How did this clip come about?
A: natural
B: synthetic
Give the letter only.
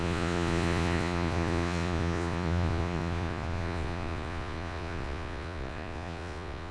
B